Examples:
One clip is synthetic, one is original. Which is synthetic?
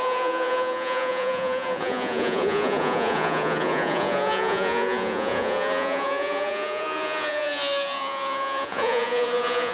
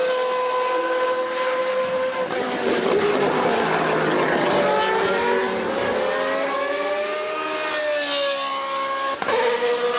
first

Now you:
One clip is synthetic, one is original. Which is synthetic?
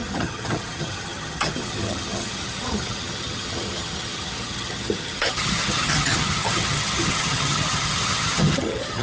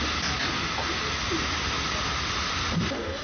first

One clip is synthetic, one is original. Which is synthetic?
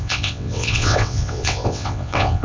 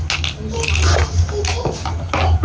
first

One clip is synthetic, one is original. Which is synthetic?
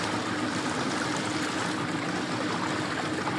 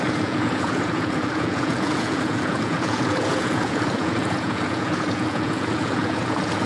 second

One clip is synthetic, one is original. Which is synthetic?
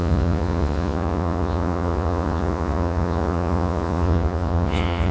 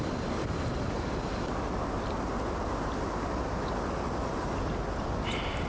first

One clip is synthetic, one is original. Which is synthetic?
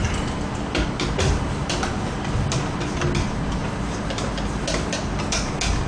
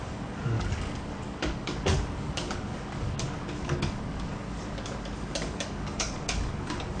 second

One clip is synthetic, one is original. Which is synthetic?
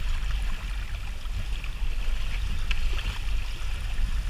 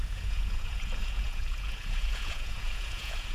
second